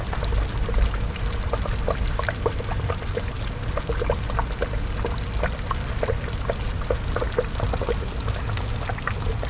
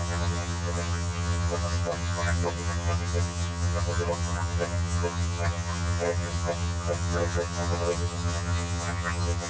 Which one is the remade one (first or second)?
second